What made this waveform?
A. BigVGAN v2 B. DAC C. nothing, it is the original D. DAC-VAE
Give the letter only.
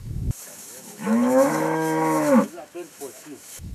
D